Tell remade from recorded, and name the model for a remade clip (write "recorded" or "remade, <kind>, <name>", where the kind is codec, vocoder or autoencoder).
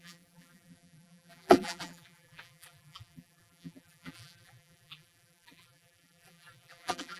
remade, vocoder, BigVGAN v2